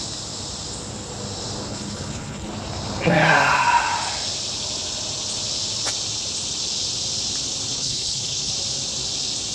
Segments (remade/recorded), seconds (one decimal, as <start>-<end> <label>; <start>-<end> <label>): 0.0-1.7 recorded; 1.7-2.5 remade; 2.5-7.7 recorded; 7.7-8.5 remade; 8.5-9.5 recorded